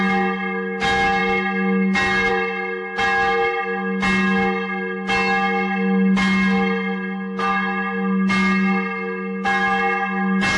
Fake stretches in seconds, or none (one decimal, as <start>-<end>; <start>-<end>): none